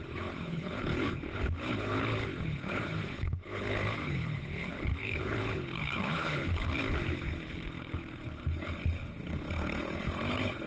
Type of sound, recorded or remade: remade